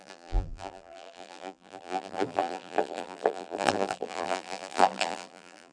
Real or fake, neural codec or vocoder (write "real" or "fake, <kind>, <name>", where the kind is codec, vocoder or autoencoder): fake, vocoder, BigVGAN v2